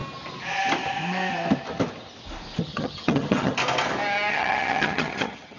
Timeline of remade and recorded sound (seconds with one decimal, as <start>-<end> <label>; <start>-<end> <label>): 0.0-2.6 recorded; 2.6-3.6 remade; 3.6-4.3 recorded; 4.3-5.6 remade